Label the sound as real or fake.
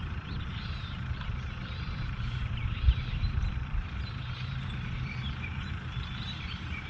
fake